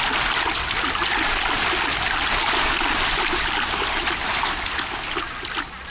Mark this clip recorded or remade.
recorded